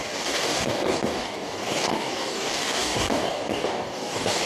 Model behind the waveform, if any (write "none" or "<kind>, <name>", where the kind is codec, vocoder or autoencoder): codec, DAC